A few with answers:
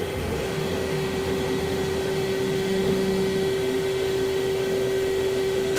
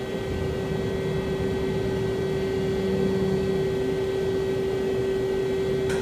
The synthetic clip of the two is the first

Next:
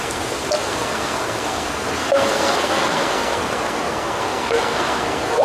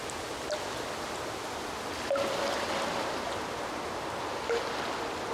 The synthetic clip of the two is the first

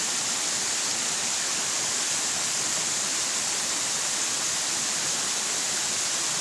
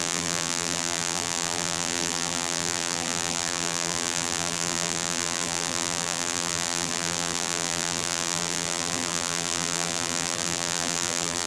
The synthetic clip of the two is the second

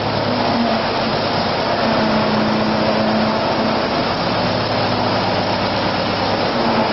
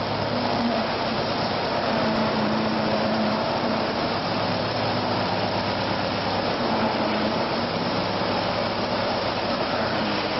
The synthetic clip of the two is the second